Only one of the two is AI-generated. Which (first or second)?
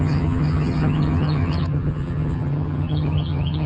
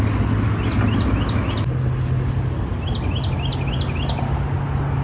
first